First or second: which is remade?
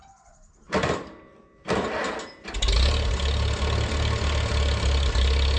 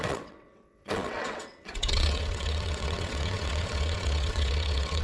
second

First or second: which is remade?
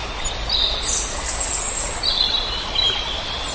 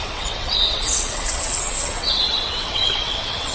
second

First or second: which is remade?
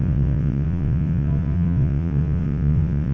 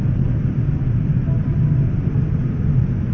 first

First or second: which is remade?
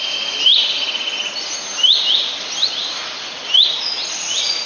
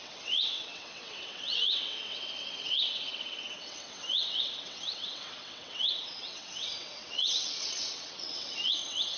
second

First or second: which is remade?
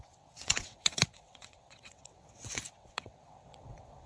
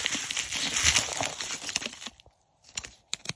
first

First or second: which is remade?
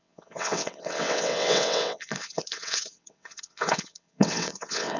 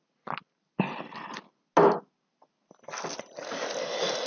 first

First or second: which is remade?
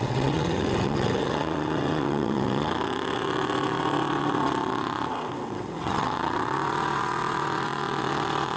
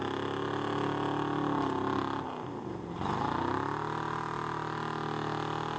first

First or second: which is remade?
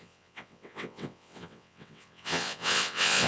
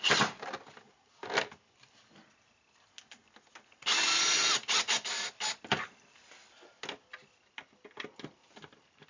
first